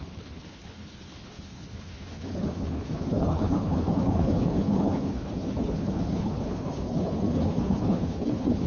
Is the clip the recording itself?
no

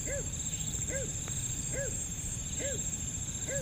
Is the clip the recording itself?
yes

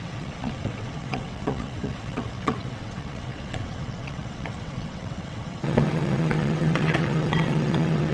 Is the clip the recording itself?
no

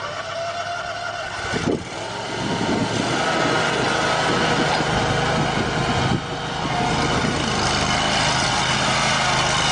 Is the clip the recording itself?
yes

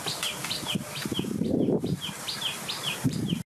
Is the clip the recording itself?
yes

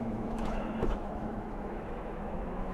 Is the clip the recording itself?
no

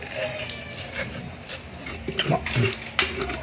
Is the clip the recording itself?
yes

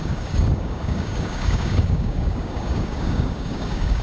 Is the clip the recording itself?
no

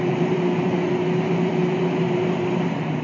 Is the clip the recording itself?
no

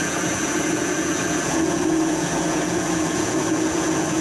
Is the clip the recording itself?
no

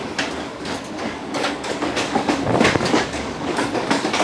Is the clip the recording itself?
no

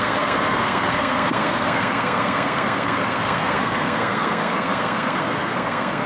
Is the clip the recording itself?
no